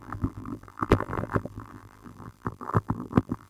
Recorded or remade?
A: remade